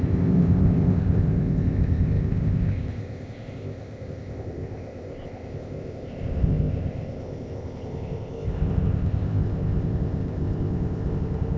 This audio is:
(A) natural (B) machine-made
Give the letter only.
B